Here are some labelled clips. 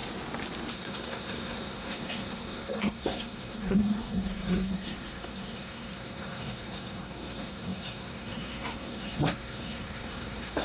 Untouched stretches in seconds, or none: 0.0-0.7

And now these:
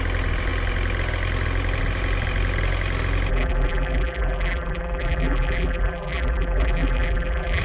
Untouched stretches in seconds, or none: 0.0-3.3

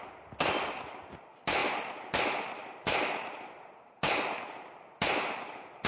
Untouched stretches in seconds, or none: 0.0-1.6; 2.2-2.6; 4.4-5.9

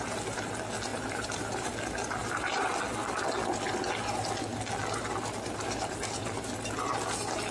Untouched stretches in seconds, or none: 0.0-0.9; 1.7-2.2; 2.7-7.5

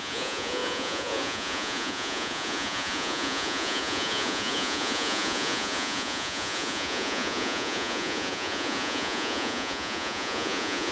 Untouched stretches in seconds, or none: none

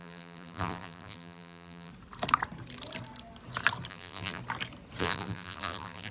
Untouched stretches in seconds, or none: 1.9-3.9; 4.4-5.0

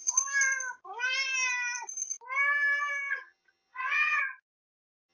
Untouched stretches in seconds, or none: 0.0-3.1; 4.2-5.1